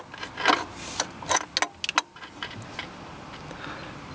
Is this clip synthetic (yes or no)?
no